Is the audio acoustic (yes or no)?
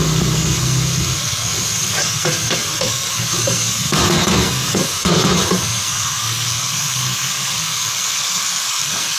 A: no